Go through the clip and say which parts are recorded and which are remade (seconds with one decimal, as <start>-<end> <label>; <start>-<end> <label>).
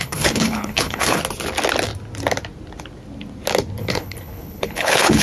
0.0-1.2 remade; 1.2-3.8 recorded; 3.8-5.2 remade